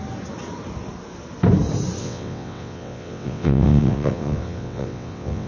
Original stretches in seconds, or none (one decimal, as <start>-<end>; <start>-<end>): 0.0-2.0